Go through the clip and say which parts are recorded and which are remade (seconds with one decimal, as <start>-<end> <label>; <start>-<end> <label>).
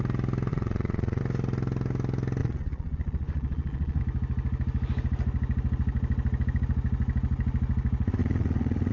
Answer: 0.0-0.5 recorded; 0.5-1.2 remade; 1.2-2.4 recorded; 2.4-4.0 remade; 4.0-8.2 recorded; 8.2-8.9 remade